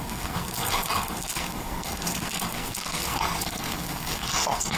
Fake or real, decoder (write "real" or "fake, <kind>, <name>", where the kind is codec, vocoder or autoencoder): fake, codec, SNAC